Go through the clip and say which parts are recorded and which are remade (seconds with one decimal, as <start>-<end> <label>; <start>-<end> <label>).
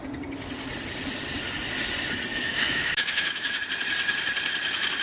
0.0-2.3 recorded; 2.3-3.6 remade; 3.6-5.0 recorded